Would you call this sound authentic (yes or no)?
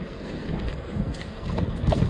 no